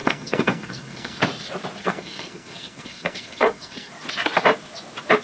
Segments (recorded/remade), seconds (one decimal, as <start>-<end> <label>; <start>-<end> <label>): 0.0-1.2 remade; 1.2-1.8 recorded; 1.8-3.9 remade; 3.9-5.2 recorded